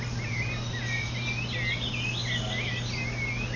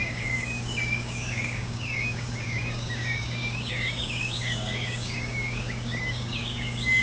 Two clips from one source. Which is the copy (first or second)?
second